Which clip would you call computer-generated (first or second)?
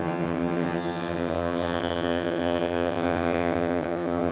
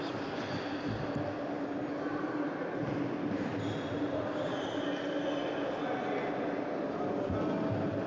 first